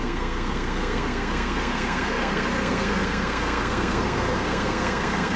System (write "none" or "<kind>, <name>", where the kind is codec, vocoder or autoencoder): codec, SNAC